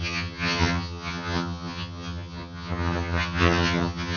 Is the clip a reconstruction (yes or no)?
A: yes